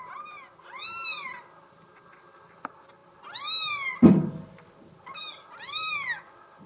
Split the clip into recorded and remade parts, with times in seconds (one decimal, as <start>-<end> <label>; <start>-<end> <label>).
0.0-6.7 recorded